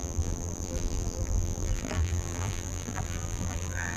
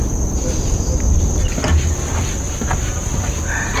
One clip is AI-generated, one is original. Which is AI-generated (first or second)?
first